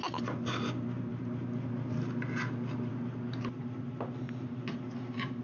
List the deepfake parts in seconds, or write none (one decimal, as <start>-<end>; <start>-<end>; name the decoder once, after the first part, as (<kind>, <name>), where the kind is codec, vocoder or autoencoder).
none